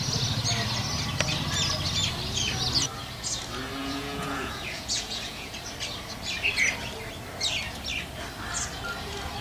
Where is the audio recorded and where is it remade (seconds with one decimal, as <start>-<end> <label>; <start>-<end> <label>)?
0.0-3.8 recorded; 3.8-5.5 remade; 5.5-9.4 recorded